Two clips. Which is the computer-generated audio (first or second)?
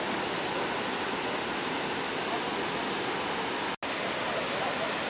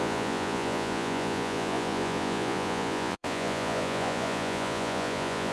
second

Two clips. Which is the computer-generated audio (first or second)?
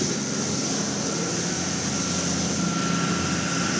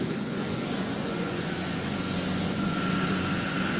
second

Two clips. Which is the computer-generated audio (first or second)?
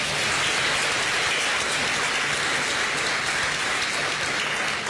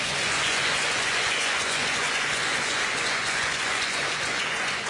second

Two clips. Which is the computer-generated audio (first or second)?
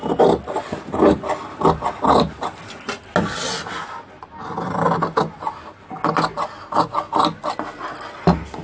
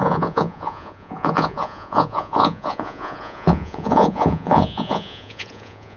second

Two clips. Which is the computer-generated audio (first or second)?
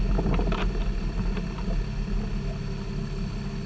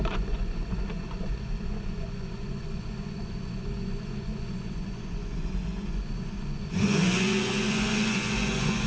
second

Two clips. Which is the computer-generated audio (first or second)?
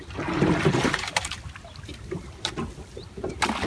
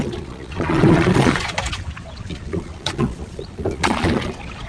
second